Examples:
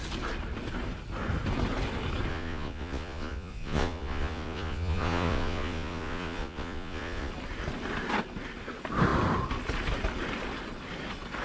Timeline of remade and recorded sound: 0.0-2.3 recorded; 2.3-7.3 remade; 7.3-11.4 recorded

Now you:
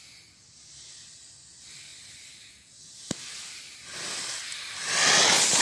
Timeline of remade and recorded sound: 0.0-5.6 recorded

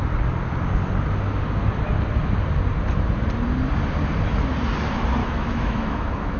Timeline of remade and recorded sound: 0.0-5.2 recorded; 5.2-6.4 remade

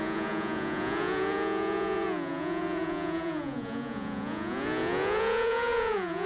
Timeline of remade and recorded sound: 0.0-6.3 remade